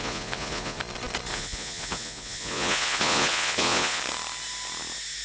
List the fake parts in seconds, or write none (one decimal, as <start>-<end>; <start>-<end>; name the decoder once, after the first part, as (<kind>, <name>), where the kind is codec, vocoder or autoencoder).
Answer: 0.0-0.8 (vocoder, Vocos); 1.3-4.0